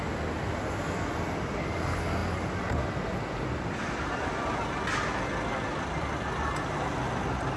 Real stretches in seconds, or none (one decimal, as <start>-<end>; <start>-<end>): 0.0-7.6